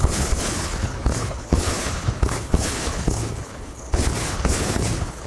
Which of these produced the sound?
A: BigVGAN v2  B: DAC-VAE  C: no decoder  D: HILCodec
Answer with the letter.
D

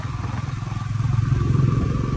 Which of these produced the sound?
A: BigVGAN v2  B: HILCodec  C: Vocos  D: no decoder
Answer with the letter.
D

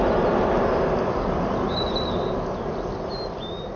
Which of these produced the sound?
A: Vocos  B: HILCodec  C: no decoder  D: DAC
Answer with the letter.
C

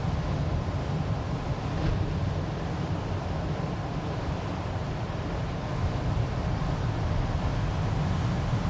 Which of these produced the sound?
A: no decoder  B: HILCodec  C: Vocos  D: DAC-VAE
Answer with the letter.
A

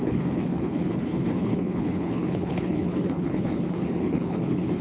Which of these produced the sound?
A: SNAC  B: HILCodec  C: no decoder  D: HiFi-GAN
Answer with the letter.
B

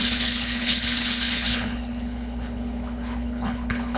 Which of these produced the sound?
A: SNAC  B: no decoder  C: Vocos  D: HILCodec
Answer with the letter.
D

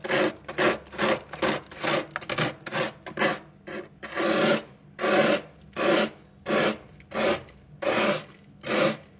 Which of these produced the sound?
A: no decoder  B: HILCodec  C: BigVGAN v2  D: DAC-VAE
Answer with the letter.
A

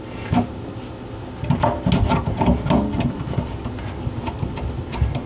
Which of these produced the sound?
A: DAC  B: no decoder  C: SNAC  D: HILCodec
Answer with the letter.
B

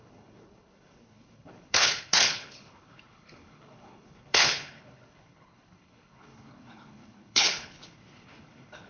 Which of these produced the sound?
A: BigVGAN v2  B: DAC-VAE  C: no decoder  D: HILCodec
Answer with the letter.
D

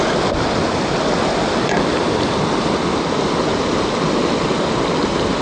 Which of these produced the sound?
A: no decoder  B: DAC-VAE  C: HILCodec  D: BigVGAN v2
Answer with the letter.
A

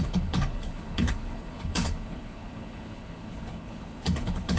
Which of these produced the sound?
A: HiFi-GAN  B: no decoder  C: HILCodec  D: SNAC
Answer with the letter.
C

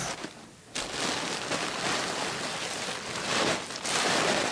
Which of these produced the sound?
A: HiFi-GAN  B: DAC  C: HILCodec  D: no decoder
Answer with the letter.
D